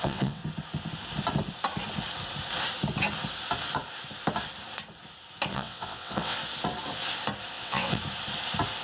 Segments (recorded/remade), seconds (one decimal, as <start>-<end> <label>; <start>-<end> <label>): 0.0-0.4 remade; 0.4-5.5 recorded; 5.5-6.4 remade; 6.4-7.5 recorded; 7.5-8.0 remade; 8.0-8.8 recorded